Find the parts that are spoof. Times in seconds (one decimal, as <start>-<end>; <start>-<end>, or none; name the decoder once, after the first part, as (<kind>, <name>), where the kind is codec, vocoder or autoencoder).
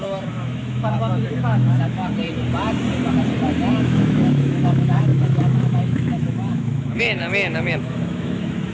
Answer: 0.0-2.0 (autoencoder, DAC-VAE); 3.7-8.7